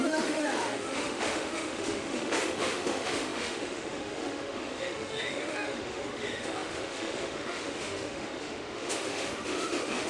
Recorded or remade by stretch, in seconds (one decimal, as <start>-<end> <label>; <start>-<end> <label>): 0.0-10.1 remade